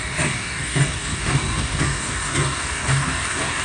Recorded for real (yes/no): no